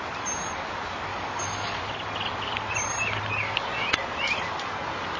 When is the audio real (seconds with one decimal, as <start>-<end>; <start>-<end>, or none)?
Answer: 0.0-1.1; 1.8-5.2